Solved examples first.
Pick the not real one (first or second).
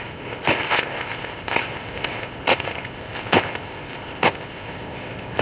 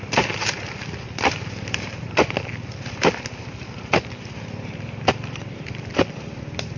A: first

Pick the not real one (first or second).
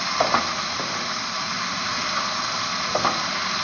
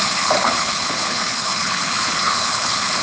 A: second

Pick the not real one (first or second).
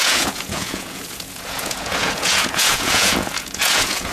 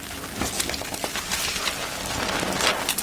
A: first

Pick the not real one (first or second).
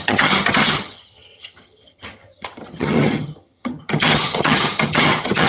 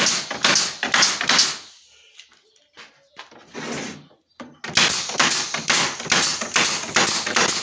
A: first